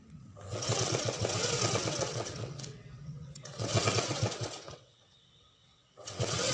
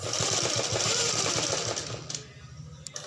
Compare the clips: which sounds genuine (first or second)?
second